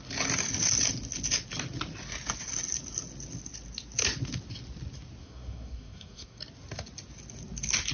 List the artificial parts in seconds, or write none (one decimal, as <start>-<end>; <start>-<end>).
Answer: 5.2-6.4